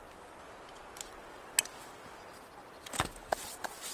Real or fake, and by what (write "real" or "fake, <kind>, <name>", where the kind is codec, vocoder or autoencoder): real